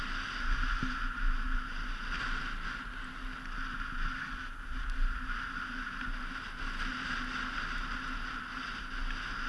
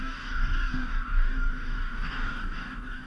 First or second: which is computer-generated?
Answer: second